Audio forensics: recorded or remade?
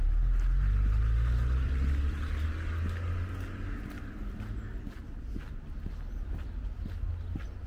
recorded